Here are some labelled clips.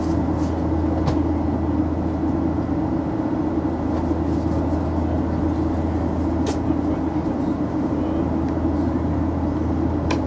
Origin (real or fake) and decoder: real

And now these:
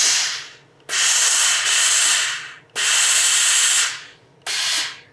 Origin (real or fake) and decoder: real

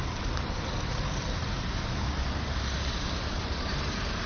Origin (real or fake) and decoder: fake, vocoder, BigVGAN v2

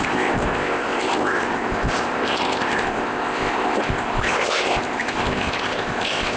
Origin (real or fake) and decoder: fake, codec, ZipCodec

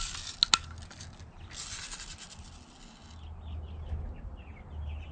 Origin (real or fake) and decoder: real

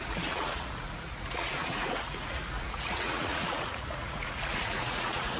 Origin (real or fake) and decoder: fake, vocoder, Vocos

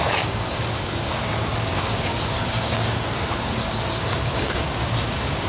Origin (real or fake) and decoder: fake, codec, DAC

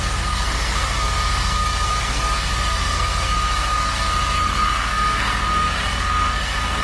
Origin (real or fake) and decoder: fake, codec, SNAC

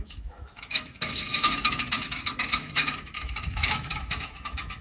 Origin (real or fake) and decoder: fake, autoencoder, DAC-VAE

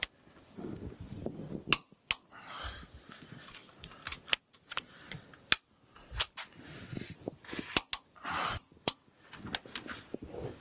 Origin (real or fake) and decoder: fake, vocoder, BigVGAN v2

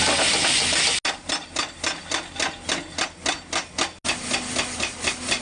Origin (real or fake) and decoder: real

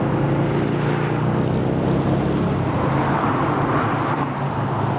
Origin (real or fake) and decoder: real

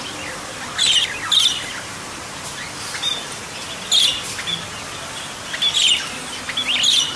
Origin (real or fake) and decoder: real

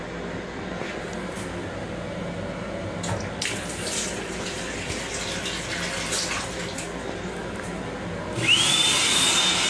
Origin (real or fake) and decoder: real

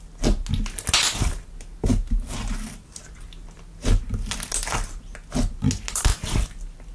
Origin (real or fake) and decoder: real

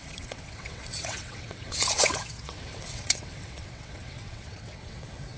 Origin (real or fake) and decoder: fake, vocoder, WaveNeXt